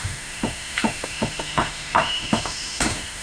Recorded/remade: remade